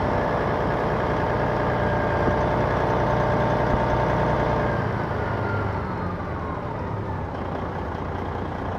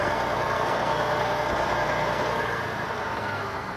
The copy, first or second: second